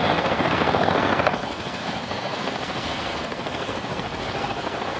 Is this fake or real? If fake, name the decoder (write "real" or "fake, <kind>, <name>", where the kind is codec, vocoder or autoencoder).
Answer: fake, codec, SNAC